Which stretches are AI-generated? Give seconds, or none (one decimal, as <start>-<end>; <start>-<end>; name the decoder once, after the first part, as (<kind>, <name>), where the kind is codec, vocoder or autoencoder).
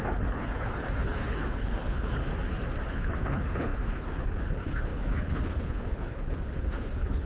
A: 0.0-2.2 (codec, HILCodec); 2.9-7.3